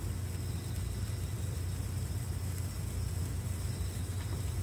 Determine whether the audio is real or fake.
real